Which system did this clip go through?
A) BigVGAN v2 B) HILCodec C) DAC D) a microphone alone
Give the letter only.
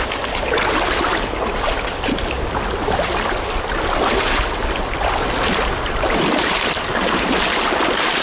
D